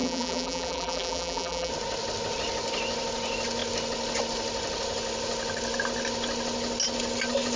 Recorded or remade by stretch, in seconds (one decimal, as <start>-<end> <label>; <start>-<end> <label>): 0.0-1.7 remade; 1.7-7.6 recorded